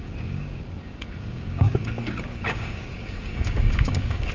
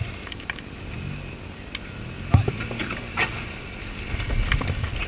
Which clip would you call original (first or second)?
second